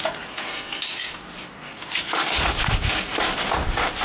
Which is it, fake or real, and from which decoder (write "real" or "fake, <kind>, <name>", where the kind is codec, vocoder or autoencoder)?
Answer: real